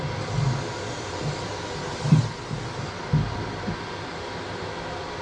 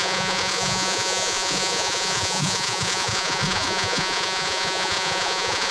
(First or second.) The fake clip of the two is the second